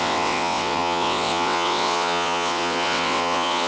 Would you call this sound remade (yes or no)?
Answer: yes